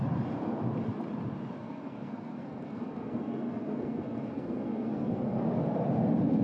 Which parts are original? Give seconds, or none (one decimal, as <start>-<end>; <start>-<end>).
0.0-1.6; 5.4-6.4

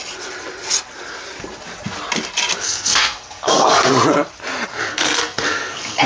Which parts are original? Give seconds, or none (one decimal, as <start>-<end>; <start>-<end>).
0.0-2.6; 3.9-4.7

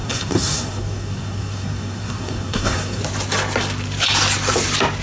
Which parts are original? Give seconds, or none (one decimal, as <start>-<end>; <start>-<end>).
3.0-5.0

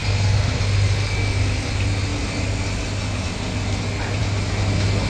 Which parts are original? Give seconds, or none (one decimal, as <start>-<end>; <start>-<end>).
0.6-5.1